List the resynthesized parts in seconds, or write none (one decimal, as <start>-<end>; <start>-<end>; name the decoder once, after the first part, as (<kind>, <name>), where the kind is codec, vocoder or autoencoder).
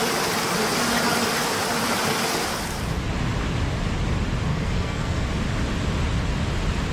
4.5-5.3 (codec, SNAC)